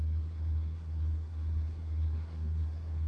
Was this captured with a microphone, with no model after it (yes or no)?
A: no